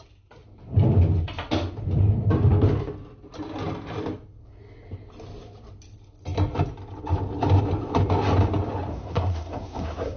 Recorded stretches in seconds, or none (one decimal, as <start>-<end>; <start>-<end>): 0.0-8.9